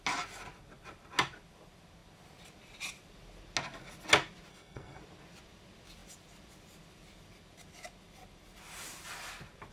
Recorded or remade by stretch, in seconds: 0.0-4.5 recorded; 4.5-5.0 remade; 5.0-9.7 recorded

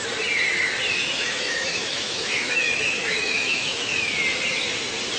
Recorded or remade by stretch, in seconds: 0.0-1.0 recorded; 1.0-4.1 remade; 4.1-5.2 recorded